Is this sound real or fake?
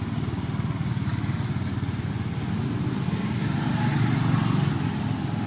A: real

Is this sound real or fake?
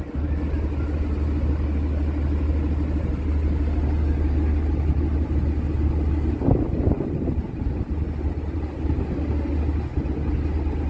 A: real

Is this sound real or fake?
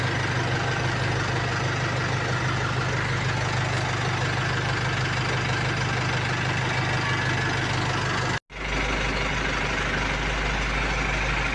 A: real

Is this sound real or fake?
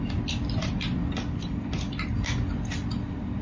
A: fake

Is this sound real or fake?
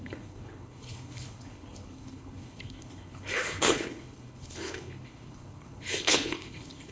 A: fake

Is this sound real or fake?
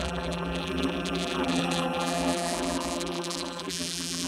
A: fake